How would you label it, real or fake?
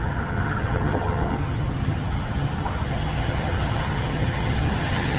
fake